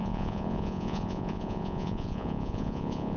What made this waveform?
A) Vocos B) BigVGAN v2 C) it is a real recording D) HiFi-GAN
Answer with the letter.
A